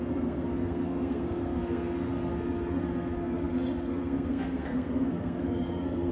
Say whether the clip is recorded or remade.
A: remade